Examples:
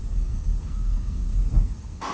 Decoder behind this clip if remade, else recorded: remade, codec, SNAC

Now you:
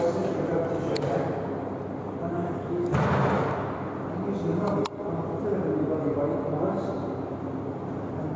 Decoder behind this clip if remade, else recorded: recorded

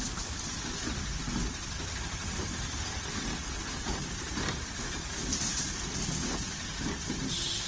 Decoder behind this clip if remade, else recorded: remade, vocoder, BigVGAN v2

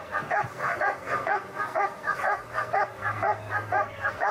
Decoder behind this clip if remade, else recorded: remade, codec, SNAC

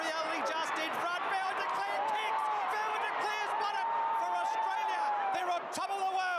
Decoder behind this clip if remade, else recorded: recorded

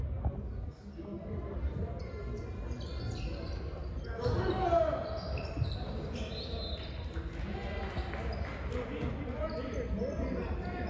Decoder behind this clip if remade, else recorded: recorded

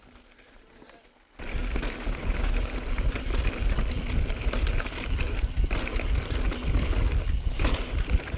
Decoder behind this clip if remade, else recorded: recorded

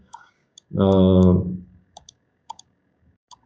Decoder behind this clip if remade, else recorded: remade, codec, DAC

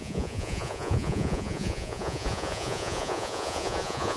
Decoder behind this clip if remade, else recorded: remade, vocoder, Vocos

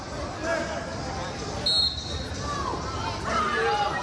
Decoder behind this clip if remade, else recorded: recorded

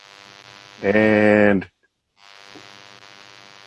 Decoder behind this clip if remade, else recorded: recorded